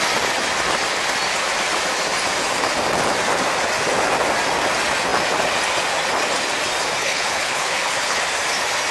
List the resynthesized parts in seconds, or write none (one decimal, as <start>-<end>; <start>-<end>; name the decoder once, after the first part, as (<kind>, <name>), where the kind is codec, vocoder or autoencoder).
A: 7.0-8.2 (codec, HILCodec)